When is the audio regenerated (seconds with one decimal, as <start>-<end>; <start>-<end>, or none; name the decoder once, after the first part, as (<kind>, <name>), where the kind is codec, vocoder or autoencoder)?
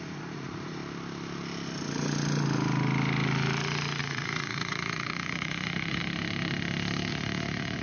0.0-0.8 (vocoder, Vocos); 4.0-6.0; 7.1-7.8